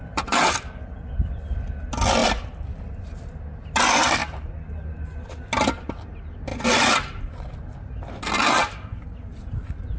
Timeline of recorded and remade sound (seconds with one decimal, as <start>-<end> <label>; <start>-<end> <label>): 0.0-10.0 recorded